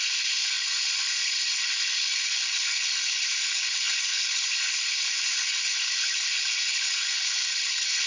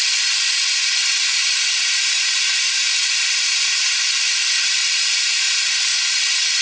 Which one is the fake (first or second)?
first